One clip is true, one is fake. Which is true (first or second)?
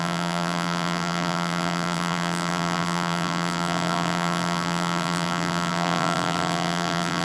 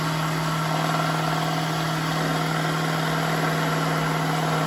second